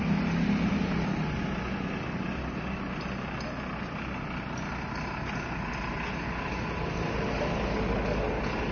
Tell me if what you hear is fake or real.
real